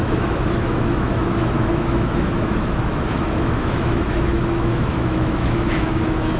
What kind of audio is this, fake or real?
fake